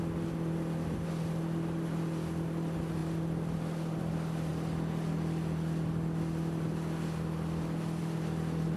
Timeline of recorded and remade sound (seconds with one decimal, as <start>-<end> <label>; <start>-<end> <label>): 0.0-4.5 remade; 4.5-8.0 recorded; 8.0-8.8 remade